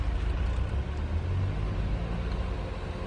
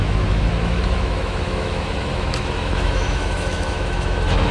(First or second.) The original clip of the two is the first